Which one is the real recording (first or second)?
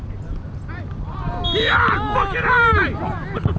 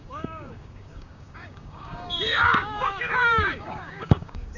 first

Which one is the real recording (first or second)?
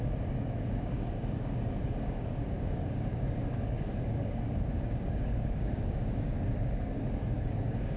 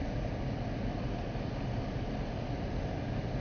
second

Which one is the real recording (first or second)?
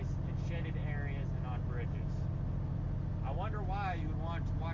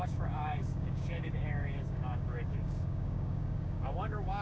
first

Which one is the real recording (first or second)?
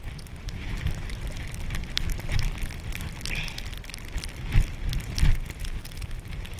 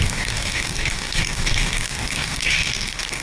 first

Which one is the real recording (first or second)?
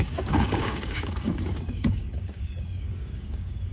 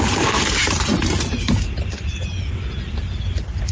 second